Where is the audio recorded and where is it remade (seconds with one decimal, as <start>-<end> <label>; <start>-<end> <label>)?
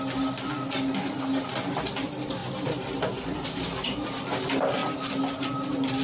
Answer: 0.0-6.0 recorded